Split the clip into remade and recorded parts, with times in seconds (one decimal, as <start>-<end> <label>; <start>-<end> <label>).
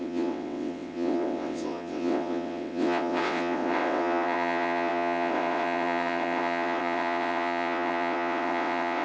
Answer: 0.0-9.0 remade